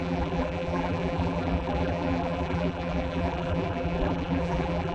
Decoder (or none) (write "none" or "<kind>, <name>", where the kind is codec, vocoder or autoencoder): vocoder, BigVGAN v2